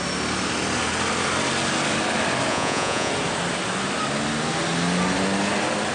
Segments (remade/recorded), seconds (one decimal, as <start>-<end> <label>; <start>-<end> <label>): 0.0-2.5 recorded; 2.5-3.1 remade; 3.1-5.9 recorded